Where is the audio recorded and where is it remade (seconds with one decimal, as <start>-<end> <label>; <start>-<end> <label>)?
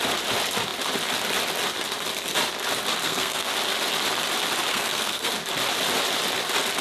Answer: 0.0-3.0 recorded; 3.0-3.5 remade; 3.5-4.7 recorded; 4.7-5.3 remade; 5.3-6.8 recorded